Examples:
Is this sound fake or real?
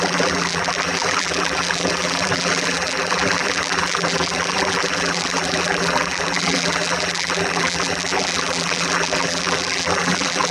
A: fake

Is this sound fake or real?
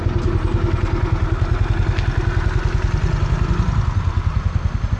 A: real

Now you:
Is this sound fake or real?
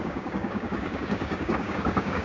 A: fake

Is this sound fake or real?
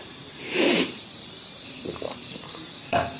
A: fake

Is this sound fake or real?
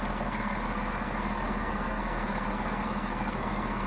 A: fake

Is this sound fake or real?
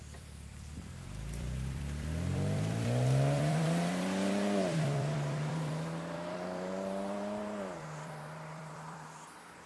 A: fake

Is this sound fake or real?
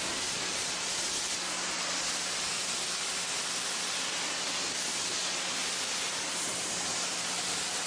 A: real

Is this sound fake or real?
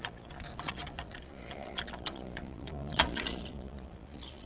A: fake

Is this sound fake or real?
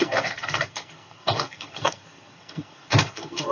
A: fake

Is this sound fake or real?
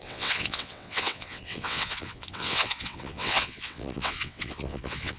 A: fake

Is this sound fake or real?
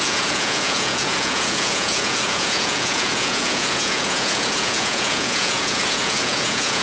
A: fake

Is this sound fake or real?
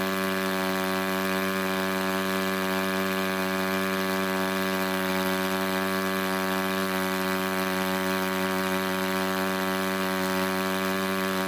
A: real